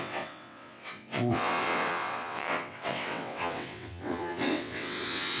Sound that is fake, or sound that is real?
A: fake